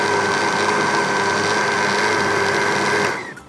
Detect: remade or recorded recorded